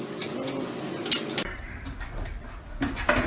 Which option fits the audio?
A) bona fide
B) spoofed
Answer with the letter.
A